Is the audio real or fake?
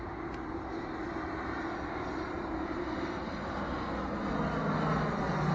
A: real